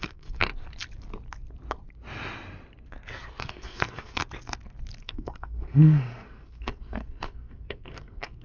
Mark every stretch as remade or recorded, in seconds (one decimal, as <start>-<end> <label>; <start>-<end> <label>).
0.0-0.5 remade; 0.5-3.4 recorded; 3.4-4.2 remade; 4.2-5.0 recorded; 5.0-8.4 remade